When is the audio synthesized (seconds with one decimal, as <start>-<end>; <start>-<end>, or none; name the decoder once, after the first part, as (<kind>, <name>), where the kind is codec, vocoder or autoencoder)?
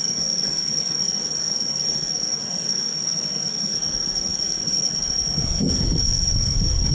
0.0-6.9 (codec, SNAC)